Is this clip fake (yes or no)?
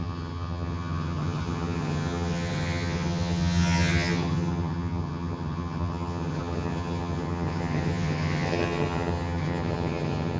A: yes